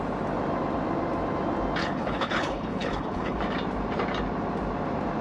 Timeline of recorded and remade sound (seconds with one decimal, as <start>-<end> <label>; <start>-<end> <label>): 0.0-1.8 recorded; 1.8-3.4 remade; 3.4-5.2 recorded